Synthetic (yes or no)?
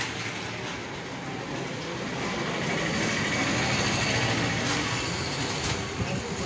no